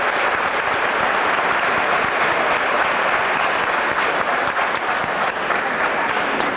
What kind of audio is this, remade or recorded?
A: recorded